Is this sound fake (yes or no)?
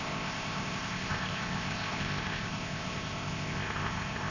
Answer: yes